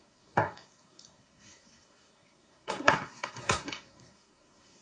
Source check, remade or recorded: remade